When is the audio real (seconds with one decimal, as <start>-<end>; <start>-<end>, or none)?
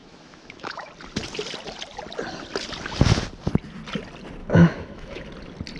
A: 0.9-4.4; 5.2-5.8